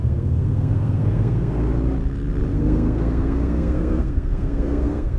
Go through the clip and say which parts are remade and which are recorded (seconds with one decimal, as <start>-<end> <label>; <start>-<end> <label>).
0.0-1.7 remade; 1.7-2.5 recorded; 2.5-5.2 remade